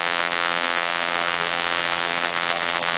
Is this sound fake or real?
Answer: fake